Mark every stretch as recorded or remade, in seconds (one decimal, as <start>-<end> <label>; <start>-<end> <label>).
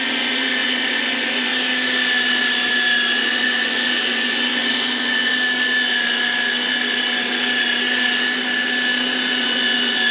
0.0-1.5 remade; 1.5-3.2 recorded; 3.2-5.3 remade; 5.3-9.4 recorded; 9.4-10.1 remade